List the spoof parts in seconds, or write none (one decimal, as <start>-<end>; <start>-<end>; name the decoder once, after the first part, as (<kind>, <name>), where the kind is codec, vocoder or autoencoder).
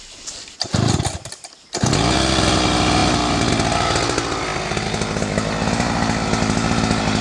none